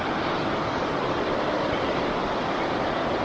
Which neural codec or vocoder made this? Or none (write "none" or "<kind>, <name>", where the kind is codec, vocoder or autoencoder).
none